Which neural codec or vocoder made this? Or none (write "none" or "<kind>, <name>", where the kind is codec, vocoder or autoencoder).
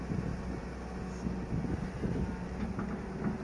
none